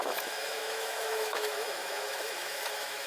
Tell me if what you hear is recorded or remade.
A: remade